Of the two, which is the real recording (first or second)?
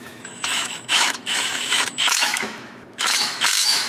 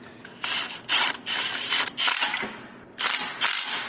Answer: second